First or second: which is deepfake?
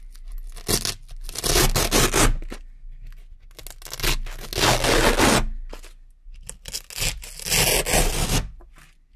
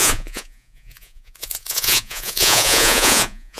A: second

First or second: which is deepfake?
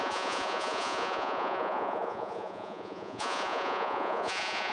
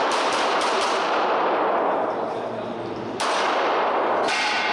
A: first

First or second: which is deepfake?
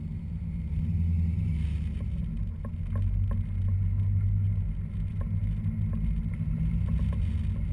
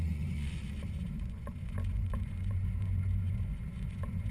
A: second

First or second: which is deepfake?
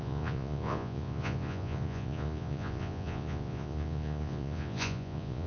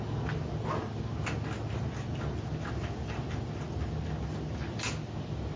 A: first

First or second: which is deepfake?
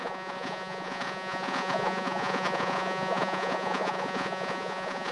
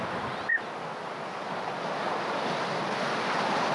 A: first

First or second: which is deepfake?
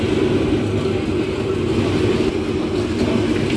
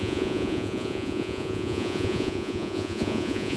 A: second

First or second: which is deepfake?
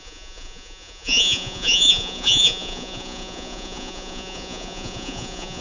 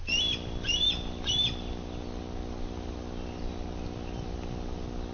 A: first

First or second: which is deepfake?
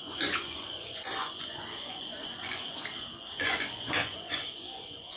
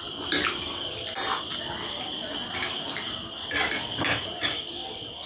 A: first